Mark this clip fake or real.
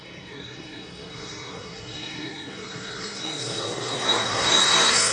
fake